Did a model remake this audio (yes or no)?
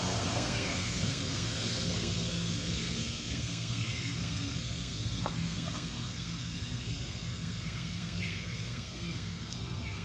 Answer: yes